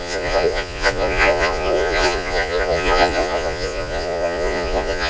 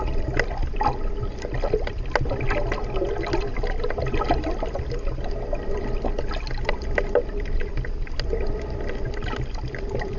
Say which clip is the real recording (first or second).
second